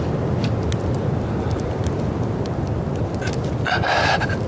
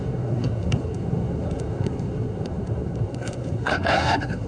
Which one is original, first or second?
first